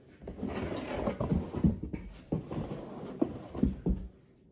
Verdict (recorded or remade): recorded